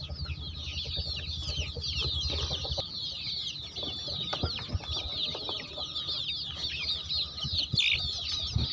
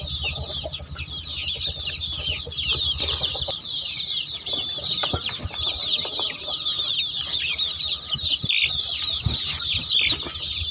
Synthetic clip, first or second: second